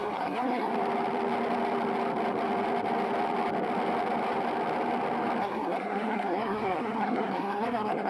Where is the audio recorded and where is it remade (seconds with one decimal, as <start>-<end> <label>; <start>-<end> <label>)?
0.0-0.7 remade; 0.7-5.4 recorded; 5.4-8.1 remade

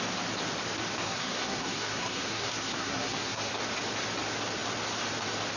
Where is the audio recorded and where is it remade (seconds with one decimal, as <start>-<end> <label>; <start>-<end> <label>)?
0.0-1.0 recorded; 1.0-3.5 remade; 3.5-5.6 recorded

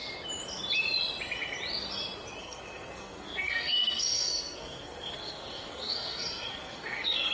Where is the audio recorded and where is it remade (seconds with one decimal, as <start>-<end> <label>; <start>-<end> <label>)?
0.0-2.4 recorded; 2.4-7.3 remade